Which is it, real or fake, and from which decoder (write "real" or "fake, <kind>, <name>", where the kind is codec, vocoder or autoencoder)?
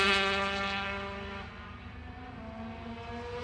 real